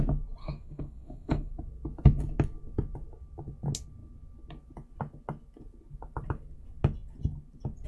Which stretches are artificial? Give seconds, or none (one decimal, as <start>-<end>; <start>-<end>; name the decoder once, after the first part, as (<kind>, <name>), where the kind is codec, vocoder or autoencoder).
0.4-1.5 (codec, SNAC)